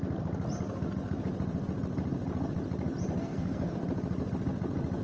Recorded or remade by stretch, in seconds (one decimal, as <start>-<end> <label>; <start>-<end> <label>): 0.0-3.2 recorded; 3.2-3.7 remade; 3.7-5.0 recorded